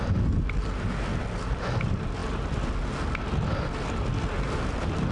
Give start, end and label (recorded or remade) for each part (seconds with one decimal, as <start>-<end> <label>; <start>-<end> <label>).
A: 0.0-5.1 recorded